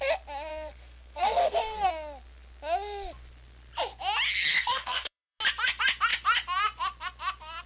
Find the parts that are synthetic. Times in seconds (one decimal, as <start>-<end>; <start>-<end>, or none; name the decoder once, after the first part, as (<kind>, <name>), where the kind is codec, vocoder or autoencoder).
0.5-1.9 (codec, SNAC); 4.5-5.4